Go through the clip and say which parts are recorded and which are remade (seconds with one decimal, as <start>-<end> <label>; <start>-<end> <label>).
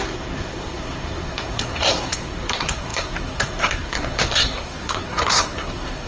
0.0-6.1 remade